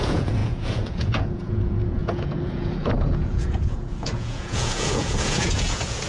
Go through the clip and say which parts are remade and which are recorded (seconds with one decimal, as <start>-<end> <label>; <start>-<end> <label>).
0.0-6.1 remade